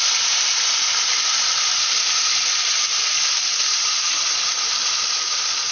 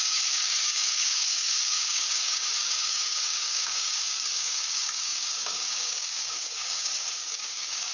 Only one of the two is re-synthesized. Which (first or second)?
second